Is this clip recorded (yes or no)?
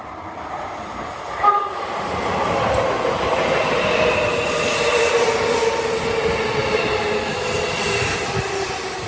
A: yes